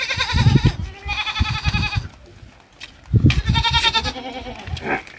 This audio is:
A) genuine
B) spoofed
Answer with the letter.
A